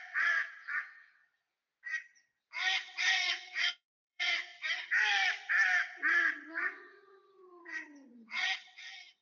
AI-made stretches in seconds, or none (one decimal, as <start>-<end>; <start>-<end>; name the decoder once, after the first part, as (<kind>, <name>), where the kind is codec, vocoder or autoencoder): 0.0-1.6 (vocoder, WaveNeXt); 2.8-4.5; 5.8-9.2